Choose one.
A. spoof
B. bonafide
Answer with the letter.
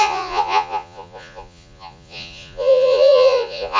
A